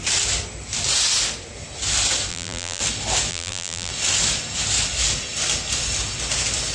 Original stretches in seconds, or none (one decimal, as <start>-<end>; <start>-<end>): 0.0-2.3; 2.8-3.3; 3.9-6.7